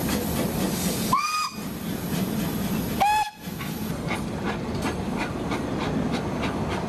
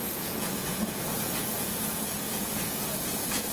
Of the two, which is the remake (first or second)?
second